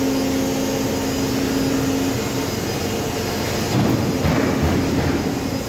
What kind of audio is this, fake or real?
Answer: real